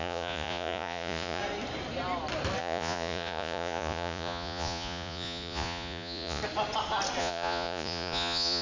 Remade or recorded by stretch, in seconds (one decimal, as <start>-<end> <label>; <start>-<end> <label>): 0.0-1.4 remade; 1.4-2.6 recorded; 2.6-6.4 remade; 6.4-7.2 recorded; 7.2-8.6 remade

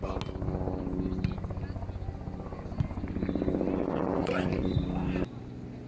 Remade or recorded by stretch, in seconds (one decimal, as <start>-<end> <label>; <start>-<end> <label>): 0.0-3.8 recorded; 3.8-4.8 remade; 4.8-5.9 recorded

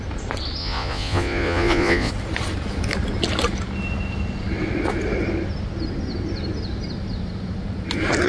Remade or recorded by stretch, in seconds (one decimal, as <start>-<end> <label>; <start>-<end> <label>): 0.0-0.6 recorded; 0.6-2.1 remade; 2.1-8.3 recorded